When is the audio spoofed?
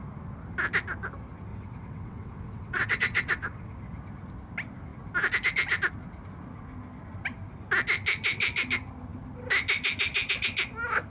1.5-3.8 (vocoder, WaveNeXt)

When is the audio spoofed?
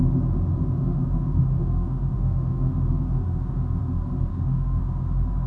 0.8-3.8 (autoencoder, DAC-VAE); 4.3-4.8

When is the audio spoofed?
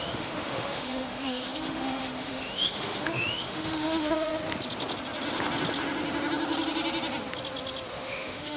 0.0-4.3 (autoencoder, DAC-VAE); 7.9-8.6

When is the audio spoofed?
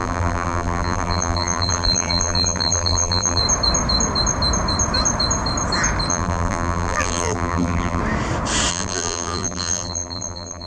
0.0-3.4 (vocoder, BigVGAN v2); 6.1-8.0; 8.7-10.7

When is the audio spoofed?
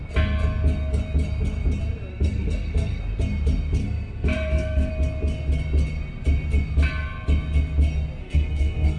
2.1-3.0 (codec, SNAC); 3.8-4.9; 8.2-9.0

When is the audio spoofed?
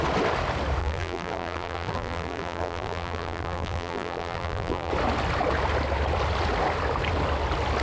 0.8-4.9 (vocoder, BigVGAN v2)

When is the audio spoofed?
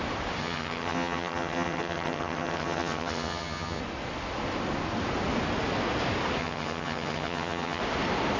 0.4-3.8 (vocoder, HiFi-GAN); 6.4-7.8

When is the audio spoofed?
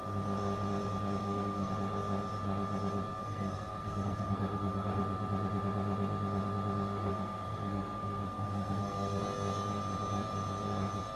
1.2-1.7 (codec, SNAC); 3.2-5.0; 7.1-9.2